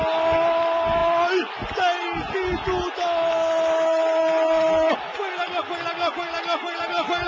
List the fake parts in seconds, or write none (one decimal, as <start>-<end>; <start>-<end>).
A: none